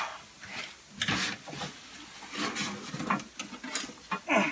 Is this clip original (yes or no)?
yes